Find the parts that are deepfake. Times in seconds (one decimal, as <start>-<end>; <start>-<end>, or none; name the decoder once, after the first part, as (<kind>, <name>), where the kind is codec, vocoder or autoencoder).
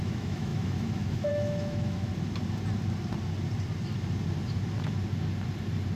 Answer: 0.0-2.1 (autoencoder, DAC-VAE)